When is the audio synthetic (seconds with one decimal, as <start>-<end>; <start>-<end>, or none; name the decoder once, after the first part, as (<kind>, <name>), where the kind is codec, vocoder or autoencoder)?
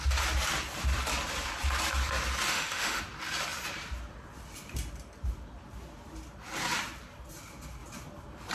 2.5-3.0 (autoencoder, DAC-VAE)